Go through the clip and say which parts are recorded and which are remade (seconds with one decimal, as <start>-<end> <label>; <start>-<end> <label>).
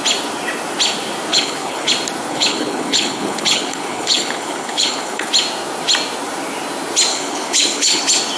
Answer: 0.0-1.3 recorded; 1.3-1.9 remade; 1.9-2.3 recorded; 2.3-5.3 remade; 5.3-7.1 recorded; 7.1-8.0 remade; 8.0-8.4 recorded